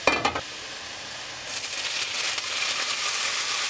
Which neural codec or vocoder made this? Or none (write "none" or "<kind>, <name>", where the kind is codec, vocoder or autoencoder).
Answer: none